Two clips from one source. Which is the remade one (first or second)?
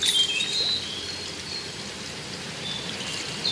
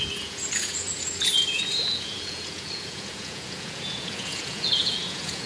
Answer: second